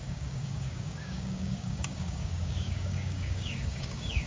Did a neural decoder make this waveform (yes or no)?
yes